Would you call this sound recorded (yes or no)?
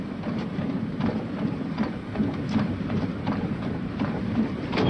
no